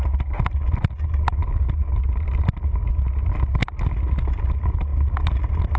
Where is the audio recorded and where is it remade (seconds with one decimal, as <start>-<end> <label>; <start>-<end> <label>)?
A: 0.0-5.8 recorded